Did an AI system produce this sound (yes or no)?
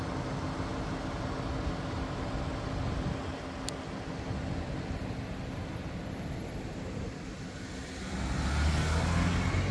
no